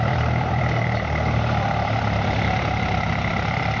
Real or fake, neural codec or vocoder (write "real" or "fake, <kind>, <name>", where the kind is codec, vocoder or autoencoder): fake, vocoder, BigVGAN v2